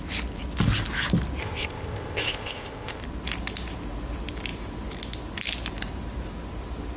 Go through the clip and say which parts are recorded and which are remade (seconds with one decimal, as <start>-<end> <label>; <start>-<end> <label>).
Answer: 0.0-1.4 recorded; 1.4-3.0 remade; 3.0-7.0 recorded